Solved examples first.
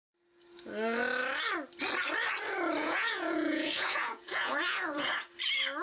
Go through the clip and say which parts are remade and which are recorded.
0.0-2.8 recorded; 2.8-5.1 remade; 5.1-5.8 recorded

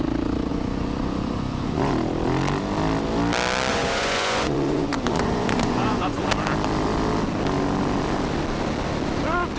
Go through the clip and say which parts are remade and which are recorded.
0.0-0.5 recorded; 0.5-1.9 remade; 1.9-3.7 recorded; 3.7-6.3 remade; 6.3-9.6 recorded